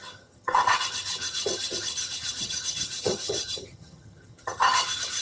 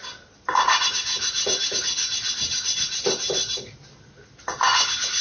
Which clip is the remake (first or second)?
first